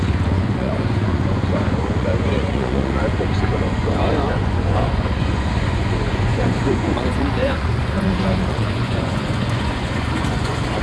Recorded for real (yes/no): no